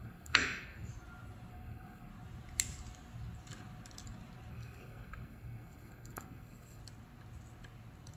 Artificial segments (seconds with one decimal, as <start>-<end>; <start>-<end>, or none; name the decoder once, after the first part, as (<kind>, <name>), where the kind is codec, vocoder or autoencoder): 0.0-0.9 (codec, SNAC); 1.5-2.1; 4.5-6.8